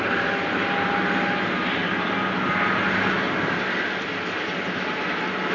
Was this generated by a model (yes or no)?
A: no